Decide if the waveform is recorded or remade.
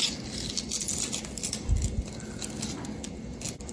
recorded